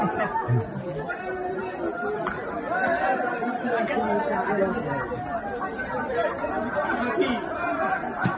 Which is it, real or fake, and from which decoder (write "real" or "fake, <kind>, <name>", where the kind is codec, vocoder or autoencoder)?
real